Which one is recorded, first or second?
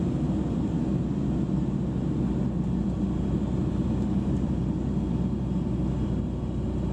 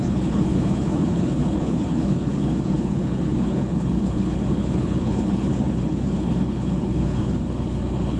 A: first